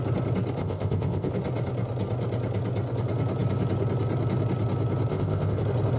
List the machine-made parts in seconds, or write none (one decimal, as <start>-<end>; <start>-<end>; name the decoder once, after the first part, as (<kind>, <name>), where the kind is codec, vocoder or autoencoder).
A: 0.6-1.3 (codec, ZipCodec); 5.1-5.6